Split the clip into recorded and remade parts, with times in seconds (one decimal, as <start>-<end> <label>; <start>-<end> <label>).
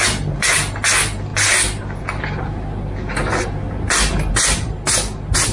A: 0.0-5.5 recorded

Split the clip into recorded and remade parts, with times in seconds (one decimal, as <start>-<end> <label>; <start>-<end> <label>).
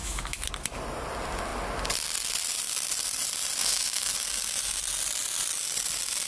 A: 0.0-0.5 remade; 0.5-3.6 recorded; 3.6-4.1 remade; 4.1-6.3 recorded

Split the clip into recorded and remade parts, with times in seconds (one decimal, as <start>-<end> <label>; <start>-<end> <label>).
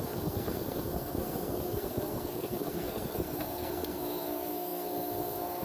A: 0.0-5.6 remade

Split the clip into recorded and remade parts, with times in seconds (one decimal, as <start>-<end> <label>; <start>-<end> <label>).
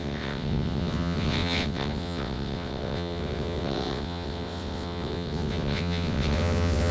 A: 0.0-6.9 remade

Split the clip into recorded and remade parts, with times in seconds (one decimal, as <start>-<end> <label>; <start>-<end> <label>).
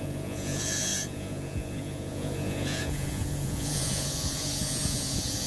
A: 0.0-5.5 remade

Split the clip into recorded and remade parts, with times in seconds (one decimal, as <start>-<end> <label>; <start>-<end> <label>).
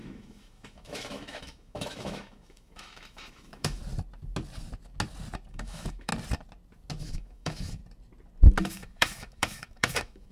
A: 0.0-3.8 remade; 3.8-5.5 recorded; 5.5-6.1 remade; 6.1-7.0 recorded; 7.0-7.8 remade; 7.8-8.6 recorded; 8.6-10.3 remade